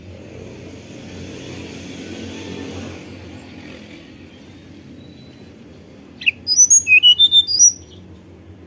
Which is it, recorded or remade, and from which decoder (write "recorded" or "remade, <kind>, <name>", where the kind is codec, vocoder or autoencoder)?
recorded